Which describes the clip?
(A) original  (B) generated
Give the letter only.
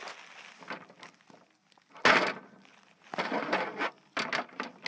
A